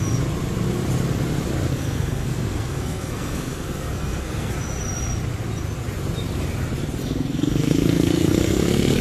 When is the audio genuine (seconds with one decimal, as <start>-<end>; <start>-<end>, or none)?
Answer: 0.0-1.7; 4.5-7.0